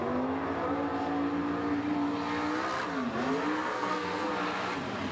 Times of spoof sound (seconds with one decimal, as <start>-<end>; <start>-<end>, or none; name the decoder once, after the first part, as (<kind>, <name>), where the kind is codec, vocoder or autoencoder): 3.7-4.3 (codec, SNAC)